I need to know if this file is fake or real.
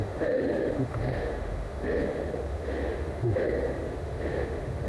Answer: fake